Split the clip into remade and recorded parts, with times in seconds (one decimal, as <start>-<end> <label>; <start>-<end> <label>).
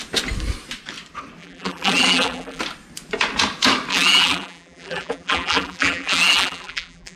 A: 0.0-1.4 recorded; 1.4-2.6 remade; 2.6-3.9 recorded; 3.9-7.2 remade